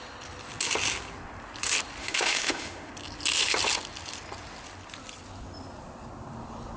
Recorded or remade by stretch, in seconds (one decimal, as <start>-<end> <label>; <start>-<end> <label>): 0.0-2.0 recorded; 2.0-2.9 remade; 2.9-6.8 recorded